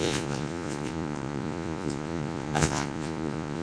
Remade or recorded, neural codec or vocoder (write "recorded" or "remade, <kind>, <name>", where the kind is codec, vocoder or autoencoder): remade, vocoder, Vocos